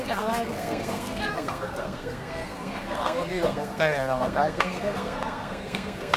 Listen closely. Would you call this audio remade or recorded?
remade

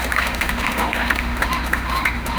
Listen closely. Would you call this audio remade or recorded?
remade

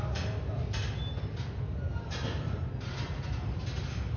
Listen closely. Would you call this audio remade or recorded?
recorded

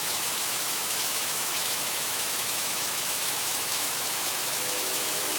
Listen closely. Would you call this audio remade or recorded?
remade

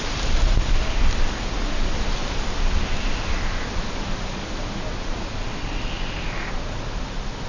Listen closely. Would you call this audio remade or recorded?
recorded